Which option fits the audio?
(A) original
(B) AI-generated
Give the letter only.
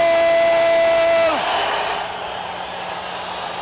A